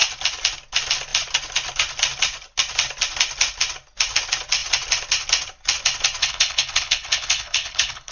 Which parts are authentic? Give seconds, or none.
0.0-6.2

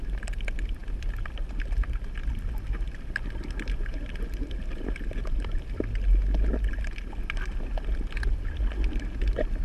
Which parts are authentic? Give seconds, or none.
0.0-9.6

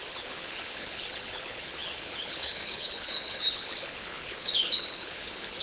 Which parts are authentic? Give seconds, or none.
none

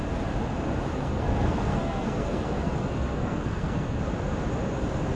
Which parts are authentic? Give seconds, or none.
0.0-0.9; 4.0-5.2

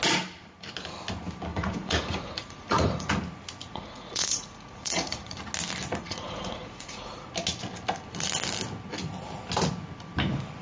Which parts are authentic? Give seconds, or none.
0.0-1.5; 3.1-3.7; 5.4-6.0; 7.3-10.6